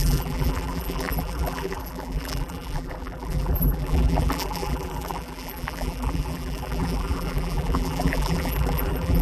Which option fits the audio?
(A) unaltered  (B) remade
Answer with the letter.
B